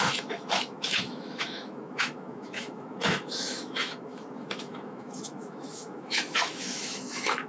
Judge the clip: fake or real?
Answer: fake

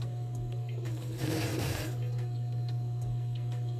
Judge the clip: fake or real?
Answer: fake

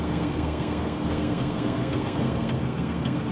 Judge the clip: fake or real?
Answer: fake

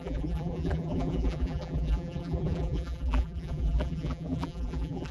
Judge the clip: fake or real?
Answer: fake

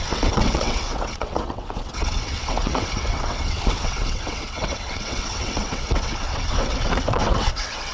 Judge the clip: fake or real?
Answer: fake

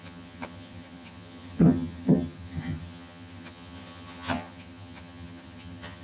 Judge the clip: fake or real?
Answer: fake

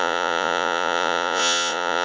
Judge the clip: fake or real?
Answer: fake